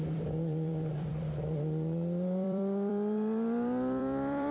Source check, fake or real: fake